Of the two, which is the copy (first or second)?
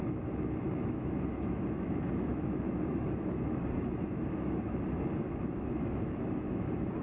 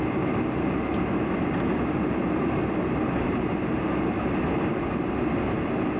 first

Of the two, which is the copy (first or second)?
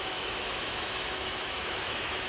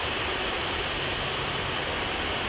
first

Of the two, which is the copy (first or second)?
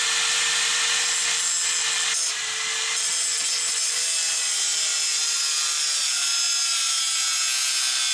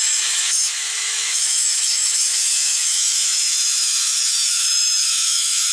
second